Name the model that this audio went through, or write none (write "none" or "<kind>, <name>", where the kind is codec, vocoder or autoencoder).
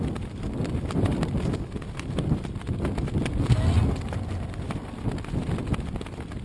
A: none